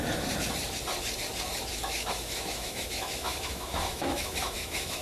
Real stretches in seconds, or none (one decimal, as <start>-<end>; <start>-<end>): 0.0-1.7